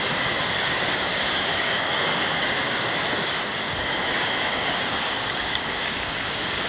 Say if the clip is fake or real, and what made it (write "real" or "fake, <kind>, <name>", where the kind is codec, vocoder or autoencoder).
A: fake, codec, DAC